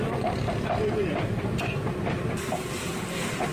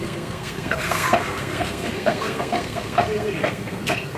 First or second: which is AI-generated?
second